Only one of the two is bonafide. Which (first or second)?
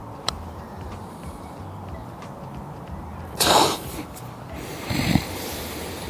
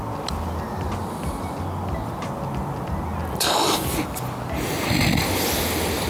second